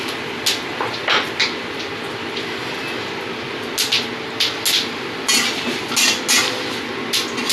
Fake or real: real